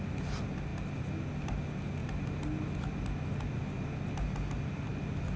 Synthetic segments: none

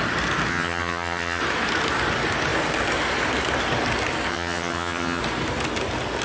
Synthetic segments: 0.5-1.4 (vocoder, HiFi-GAN); 4.3-5.2

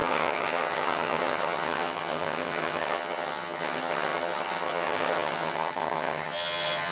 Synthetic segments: 0.0-6.9 (vocoder, HiFi-GAN)

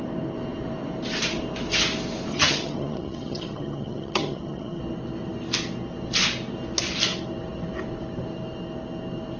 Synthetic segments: 2.3-4.8 (vocoder, HiFi-GAN)

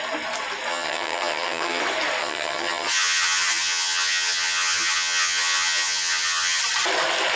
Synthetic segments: 0.7-1.8 (vocoder, HiFi-GAN); 2.2-6.6